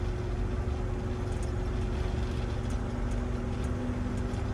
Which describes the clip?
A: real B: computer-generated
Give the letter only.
A